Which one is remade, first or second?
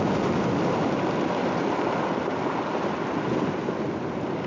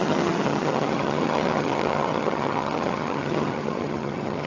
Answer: second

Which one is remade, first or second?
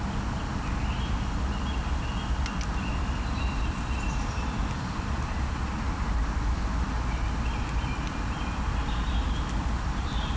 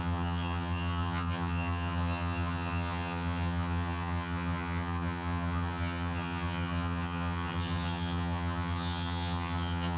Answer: second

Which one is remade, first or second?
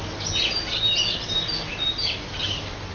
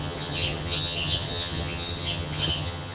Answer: second